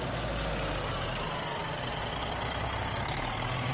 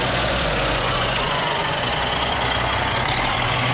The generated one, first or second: second